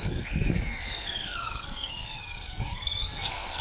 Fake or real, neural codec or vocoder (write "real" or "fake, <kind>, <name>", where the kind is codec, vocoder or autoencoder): fake, codec, SNAC